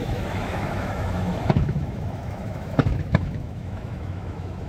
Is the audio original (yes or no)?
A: no